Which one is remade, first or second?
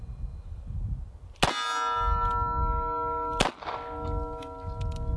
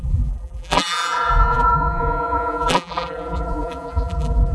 second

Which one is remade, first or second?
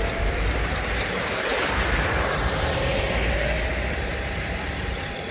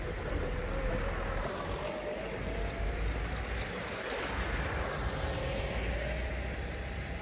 first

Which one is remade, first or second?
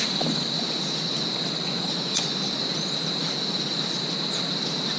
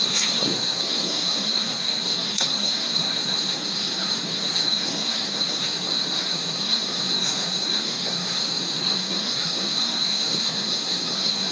second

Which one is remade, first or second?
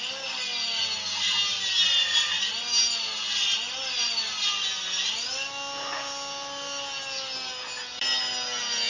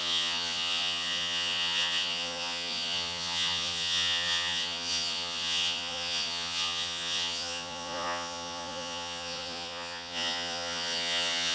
second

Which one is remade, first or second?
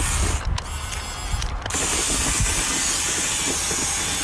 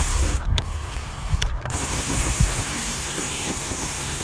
second